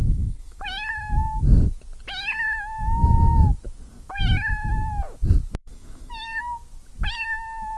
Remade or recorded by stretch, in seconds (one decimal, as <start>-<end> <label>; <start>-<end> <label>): 0.0-0.6 remade; 0.6-5.6 recorded; 5.6-6.4 remade; 6.4-7.8 recorded